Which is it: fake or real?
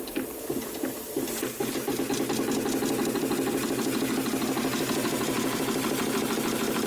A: real